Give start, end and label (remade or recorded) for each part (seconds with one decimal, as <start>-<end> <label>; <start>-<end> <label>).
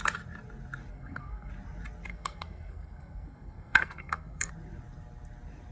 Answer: 0.0-0.9 recorded; 0.9-1.5 remade; 1.5-2.1 recorded; 2.1-4.5 remade; 4.5-5.7 recorded